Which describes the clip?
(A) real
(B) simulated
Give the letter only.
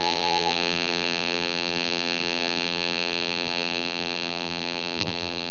B